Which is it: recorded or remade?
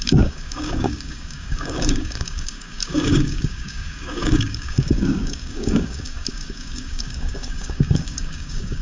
remade